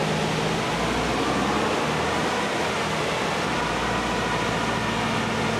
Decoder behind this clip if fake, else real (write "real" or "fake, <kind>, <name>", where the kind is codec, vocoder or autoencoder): real